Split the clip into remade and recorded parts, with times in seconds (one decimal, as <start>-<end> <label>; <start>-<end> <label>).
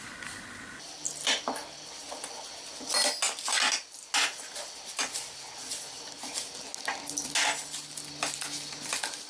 0.0-9.3 recorded